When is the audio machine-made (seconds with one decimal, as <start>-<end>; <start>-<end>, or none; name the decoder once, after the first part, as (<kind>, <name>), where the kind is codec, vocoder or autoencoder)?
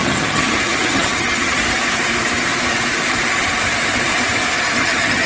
0.0-1.6 (vocoder, HiFi-GAN); 4.8-5.3